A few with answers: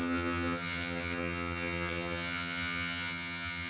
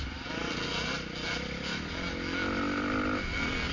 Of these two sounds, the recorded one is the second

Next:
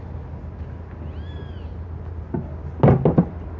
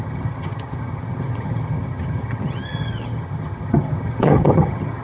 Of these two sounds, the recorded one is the first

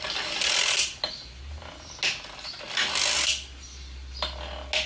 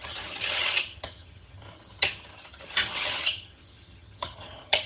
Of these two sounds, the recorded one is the first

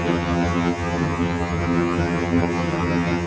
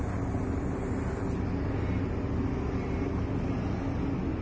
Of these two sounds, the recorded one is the second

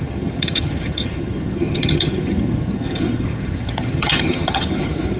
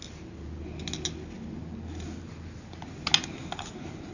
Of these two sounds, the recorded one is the second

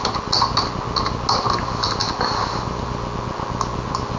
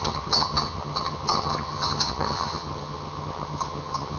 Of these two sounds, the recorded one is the first